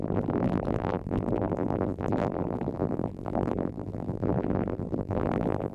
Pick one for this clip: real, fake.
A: fake